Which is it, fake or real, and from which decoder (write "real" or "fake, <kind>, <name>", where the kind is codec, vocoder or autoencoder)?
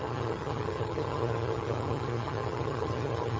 fake, vocoder, HiFi-GAN